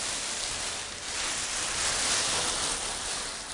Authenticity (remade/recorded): recorded